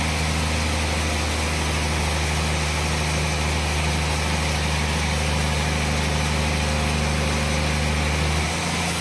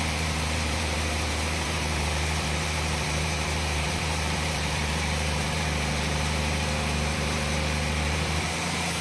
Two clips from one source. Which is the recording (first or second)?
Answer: first